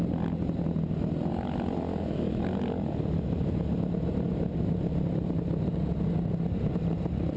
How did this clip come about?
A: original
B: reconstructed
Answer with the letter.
A